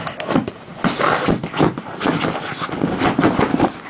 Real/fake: real